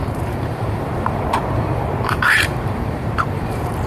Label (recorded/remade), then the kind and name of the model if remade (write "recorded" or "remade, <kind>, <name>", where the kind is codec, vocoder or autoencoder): remade, vocoder, BigVGAN v2